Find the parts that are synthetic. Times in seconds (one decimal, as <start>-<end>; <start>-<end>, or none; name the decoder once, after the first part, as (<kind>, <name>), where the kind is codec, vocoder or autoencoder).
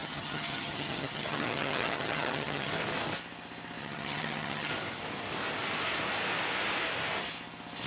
0.0-2.7 (vocoder, HiFi-GAN); 3.8-4.7